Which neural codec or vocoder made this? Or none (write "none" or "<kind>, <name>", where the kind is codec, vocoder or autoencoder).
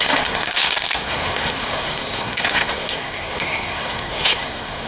codec, SNAC